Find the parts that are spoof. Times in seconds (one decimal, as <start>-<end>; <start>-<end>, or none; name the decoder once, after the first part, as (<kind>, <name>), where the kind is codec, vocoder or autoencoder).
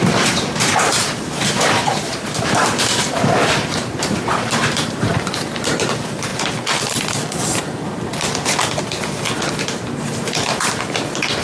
0.0-6.3 (vocoder, BigVGAN v2); 9.5-11.4